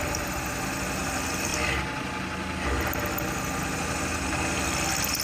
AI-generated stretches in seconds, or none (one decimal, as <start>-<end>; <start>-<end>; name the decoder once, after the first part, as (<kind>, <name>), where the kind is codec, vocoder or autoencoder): 0.0-1.5 (vocoder, BigVGAN v2); 4.6-5.2

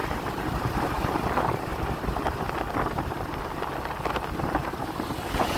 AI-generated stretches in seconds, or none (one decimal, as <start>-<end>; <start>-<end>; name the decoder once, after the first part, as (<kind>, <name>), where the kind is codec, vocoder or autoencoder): 0.0-0.8 (vocoder, BigVGAN v2)

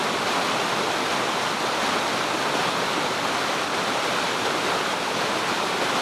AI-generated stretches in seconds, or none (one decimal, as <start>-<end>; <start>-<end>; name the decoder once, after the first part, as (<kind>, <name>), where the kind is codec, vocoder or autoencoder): none

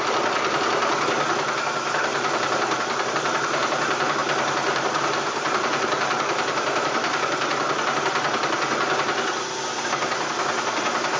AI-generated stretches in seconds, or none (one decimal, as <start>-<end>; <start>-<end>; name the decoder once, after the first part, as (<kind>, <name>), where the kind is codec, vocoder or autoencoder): 2.1-3.1 (vocoder, BigVGAN v2); 4.2-7.8